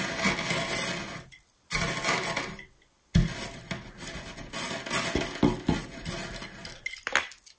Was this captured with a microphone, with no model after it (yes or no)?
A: yes